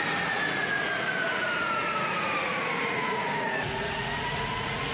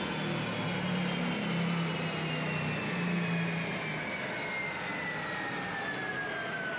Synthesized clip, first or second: first